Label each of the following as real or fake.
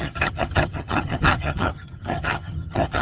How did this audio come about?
fake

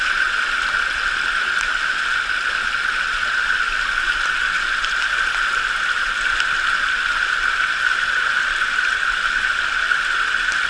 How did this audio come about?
real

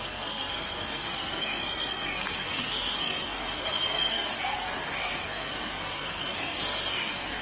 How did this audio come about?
fake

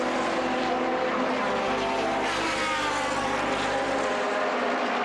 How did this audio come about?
real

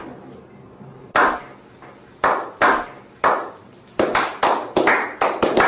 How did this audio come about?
real